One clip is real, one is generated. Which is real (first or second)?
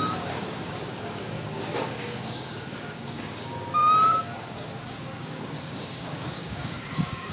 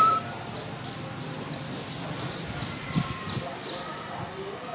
second